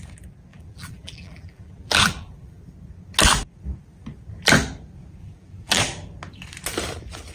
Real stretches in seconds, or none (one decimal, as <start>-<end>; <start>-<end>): 0.0-0.5; 2.6-5.2; 5.8-7.3